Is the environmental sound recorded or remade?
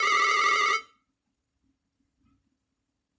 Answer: remade